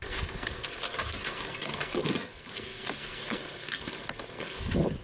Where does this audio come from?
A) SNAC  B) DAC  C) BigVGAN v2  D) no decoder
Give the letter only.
A